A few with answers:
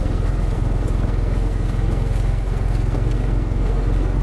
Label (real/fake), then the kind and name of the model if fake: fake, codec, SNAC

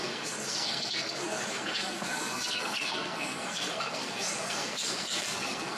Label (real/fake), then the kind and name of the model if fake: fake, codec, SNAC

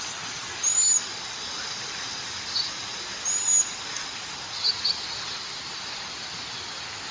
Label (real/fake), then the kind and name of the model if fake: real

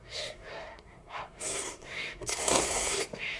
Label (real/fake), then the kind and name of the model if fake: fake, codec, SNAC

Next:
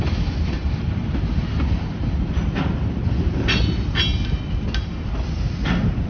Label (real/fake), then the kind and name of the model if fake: real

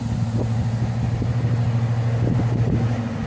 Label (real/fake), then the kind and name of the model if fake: real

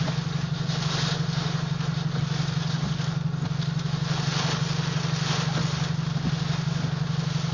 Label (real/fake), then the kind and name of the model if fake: real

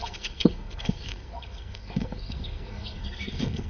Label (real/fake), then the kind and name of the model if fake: fake, codec, SNAC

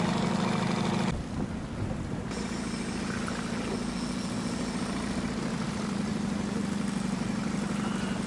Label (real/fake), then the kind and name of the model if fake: real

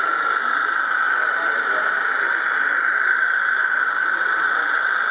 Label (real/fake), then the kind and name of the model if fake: real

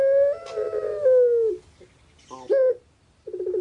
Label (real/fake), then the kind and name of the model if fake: real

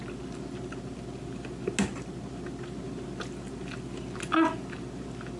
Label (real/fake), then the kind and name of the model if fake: real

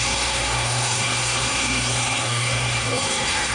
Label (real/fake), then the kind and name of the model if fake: fake, codec, SNAC